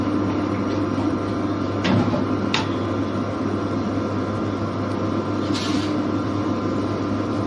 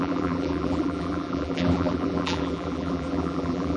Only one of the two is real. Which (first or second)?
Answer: first